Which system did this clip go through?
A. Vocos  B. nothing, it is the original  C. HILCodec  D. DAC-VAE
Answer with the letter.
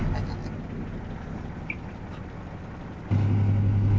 B